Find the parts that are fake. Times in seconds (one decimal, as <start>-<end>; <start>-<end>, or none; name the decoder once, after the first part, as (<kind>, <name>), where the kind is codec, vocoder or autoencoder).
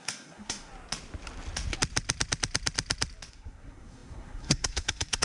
0.0-0.7 (codec, SNAC); 3.3-5.2